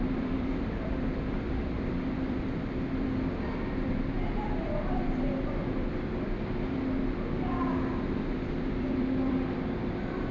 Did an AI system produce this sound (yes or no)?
yes